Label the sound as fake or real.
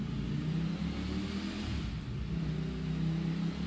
real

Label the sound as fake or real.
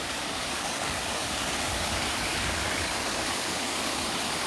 fake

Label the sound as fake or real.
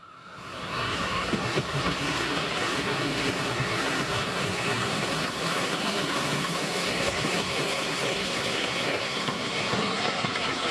fake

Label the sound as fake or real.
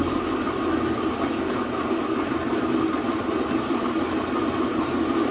real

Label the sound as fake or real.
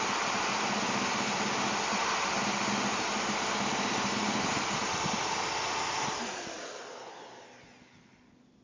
real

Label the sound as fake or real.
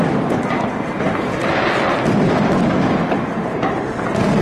real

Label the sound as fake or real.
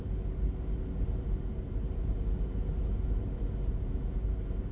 real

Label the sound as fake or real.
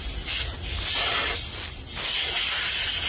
real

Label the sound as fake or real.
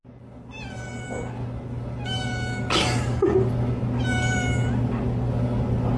real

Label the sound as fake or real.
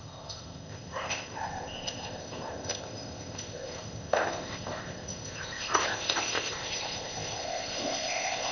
fake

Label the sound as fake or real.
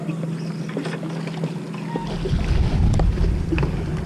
real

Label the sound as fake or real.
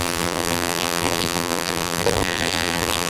fake